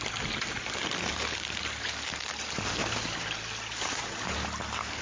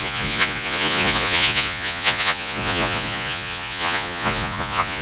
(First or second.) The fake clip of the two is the second